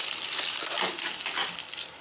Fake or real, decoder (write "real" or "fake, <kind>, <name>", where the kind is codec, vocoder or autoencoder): fake, vocoder, BigVGAN v2